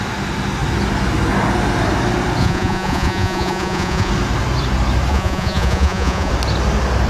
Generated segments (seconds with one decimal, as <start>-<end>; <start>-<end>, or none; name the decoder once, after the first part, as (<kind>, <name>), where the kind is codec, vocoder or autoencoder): 2.4-4.1 (vocoder, Vocos); 5.1-6.3